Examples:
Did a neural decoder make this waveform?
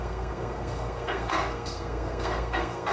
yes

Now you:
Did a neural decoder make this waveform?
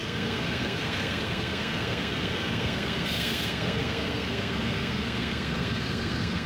yes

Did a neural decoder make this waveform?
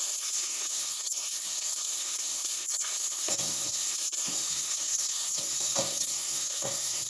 yes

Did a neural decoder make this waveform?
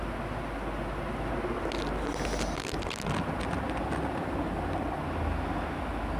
no